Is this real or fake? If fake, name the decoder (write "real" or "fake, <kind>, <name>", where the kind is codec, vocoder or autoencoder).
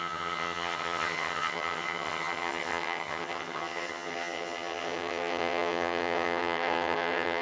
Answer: fake, vocoder, HiFi-GAN